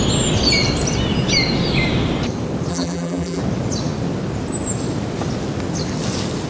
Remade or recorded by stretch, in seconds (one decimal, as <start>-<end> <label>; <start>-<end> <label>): 0.0-2.7 recorded; 2.7-3.4 remade; 3.4-6.5 recorded